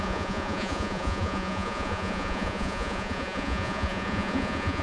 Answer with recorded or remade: remade